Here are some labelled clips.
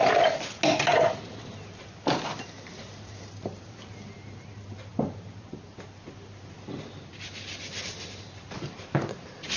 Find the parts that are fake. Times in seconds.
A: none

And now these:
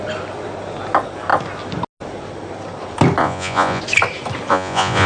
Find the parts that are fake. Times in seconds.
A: 3.2-3.8 (vocoder, Vocos); 4.5-5.1

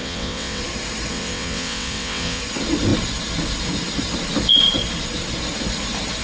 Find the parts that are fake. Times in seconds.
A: 0.0-0.6 (vocoder, WaveNeXt); 1.1-2.4